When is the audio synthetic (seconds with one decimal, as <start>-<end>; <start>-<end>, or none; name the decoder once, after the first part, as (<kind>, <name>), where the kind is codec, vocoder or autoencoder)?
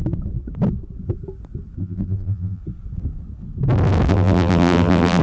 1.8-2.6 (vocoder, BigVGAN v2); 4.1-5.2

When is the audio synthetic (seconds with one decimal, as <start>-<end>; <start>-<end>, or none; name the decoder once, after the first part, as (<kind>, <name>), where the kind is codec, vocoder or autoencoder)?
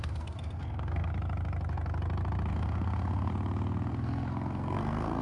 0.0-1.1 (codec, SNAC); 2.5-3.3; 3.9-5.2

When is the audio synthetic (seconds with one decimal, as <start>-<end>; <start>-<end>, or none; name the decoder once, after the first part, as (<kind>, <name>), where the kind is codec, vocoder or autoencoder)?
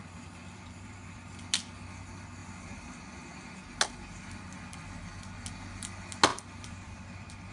0.4-1.3 (vocoder, BigVGAN v2); 2.4-3.0; 6.3-7.5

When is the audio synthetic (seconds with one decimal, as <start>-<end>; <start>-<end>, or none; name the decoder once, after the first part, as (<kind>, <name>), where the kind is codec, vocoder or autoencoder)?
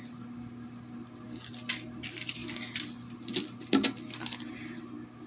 none